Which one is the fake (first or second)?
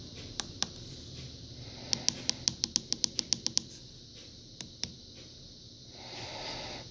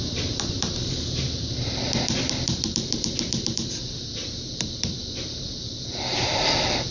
second